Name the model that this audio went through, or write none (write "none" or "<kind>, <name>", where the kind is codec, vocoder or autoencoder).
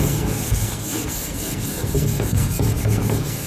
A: codec, SNAC